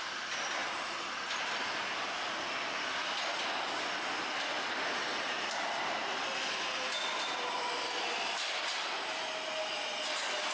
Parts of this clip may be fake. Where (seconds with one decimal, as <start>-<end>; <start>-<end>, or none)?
none